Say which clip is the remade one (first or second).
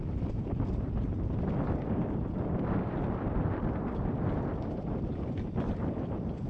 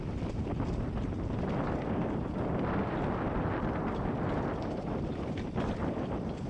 first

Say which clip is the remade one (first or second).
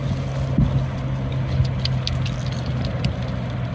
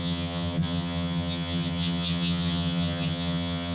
second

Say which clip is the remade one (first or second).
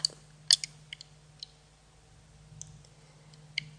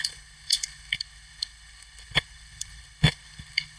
second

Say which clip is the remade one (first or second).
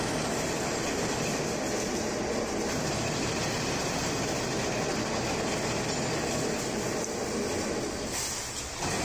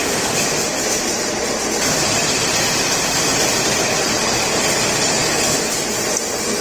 second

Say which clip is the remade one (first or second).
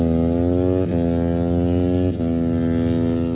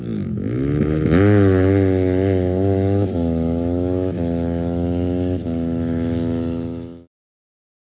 second